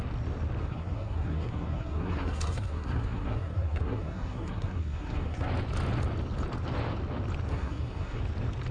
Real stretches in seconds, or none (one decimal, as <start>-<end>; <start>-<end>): 0.0-0.6; 5.5-7.5; 8.2-8.7

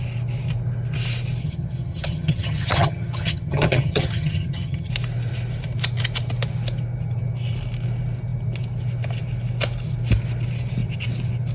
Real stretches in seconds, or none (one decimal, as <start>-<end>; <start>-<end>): 0.0-1.4; 4.9-11.5

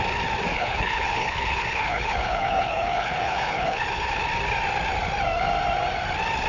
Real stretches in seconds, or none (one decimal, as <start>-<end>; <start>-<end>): 0.0-0.5; 4.2-6.5

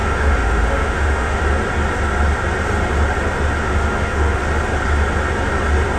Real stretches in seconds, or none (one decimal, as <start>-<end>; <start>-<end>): 1.4-3.6; 4.4-6.0

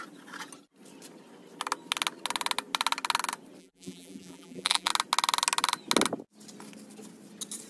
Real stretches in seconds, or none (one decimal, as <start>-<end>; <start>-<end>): 0.0-3.6; 4.9-7.7